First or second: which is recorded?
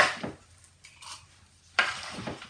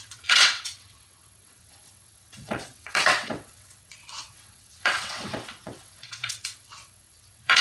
first